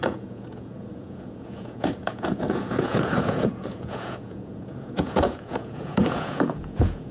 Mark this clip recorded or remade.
remade